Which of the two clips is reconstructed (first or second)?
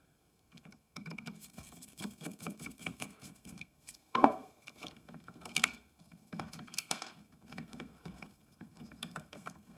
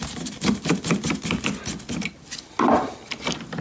first